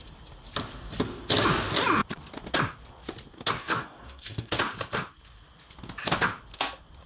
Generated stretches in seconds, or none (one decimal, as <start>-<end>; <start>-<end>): 3.6-4.5